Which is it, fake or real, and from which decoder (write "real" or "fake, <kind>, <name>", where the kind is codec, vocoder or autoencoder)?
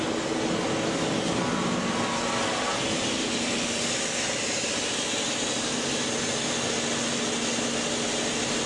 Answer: real